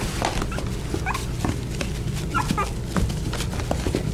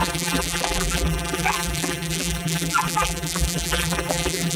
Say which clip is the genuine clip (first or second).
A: first